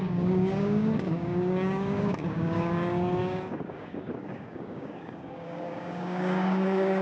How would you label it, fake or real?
fake